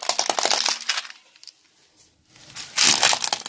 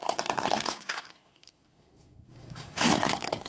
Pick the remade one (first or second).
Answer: second